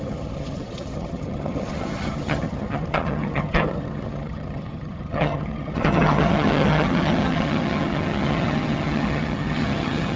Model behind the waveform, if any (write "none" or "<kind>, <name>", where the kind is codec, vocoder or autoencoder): vocoder, HiFi-GAN